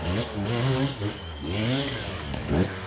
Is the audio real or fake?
fake